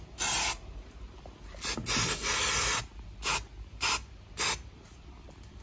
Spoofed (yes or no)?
no